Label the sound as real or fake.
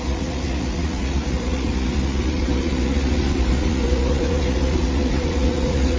fake